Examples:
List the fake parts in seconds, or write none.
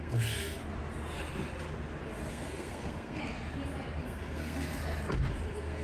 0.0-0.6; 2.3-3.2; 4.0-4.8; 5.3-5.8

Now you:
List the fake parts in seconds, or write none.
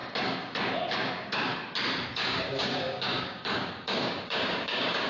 0.8-1.5; 2.1-5.1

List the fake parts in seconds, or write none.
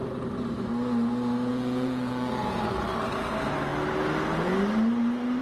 1.5-2.8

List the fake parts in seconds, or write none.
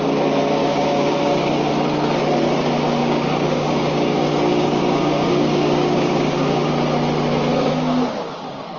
0.6-1.7; 3.0-6.7; 7.5-8.8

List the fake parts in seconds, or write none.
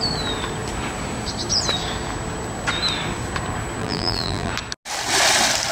3.8-4.5